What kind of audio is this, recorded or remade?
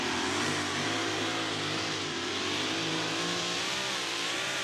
remade